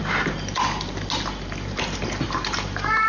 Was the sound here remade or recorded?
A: recorded